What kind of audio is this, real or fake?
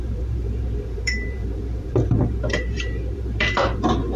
fake